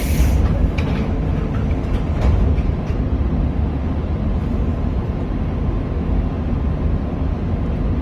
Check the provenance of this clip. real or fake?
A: real